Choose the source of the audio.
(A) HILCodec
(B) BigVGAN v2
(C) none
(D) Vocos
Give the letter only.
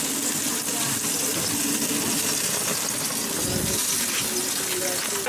C